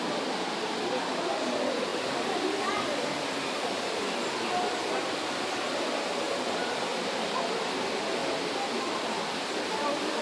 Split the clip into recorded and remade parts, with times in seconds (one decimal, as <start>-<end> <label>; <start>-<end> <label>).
0.0-1.9 recorded; 1.9-2.7 remade; 2.7-6.9 recorded; 6.9-7.6 remade; 7.6-8.2 recorded; 8.2-9.0 remade; 9.0-10.2 recorded